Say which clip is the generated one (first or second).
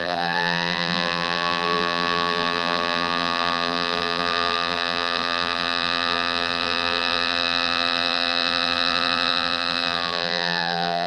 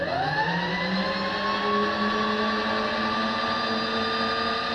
first